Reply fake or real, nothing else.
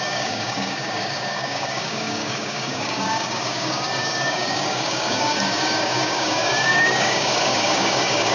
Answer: fake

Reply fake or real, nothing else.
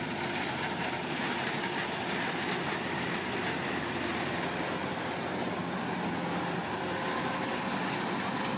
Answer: real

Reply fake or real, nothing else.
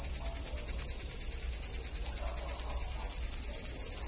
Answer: real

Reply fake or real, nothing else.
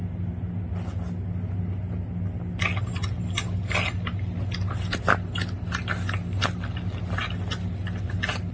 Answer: real